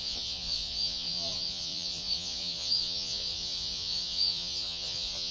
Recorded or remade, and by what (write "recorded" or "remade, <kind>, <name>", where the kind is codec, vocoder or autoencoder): remade, vocoder, Vocos